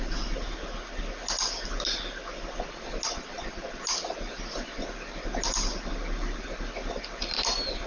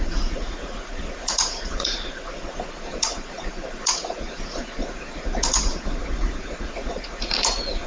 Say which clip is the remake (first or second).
second